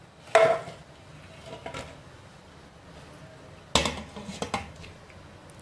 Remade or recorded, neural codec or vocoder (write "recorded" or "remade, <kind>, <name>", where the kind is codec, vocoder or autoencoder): recorded